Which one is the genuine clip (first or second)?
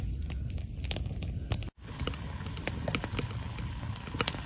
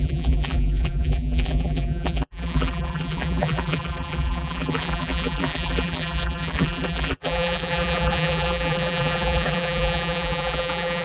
first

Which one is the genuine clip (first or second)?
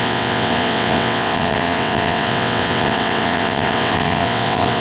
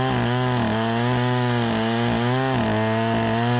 second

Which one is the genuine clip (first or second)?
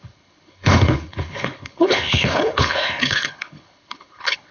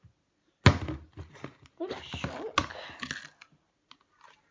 second